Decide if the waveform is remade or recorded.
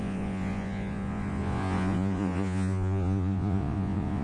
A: remade